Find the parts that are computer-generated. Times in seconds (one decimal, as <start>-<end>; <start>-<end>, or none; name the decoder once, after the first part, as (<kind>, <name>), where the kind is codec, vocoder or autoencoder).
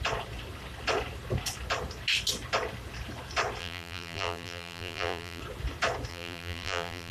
3.6-5.4 (vocoder, BigVGAN v2); 6.1-7.1